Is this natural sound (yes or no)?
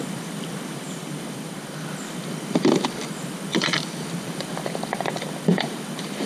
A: no